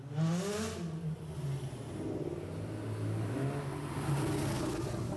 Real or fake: real